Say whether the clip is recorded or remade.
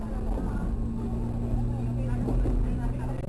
recorded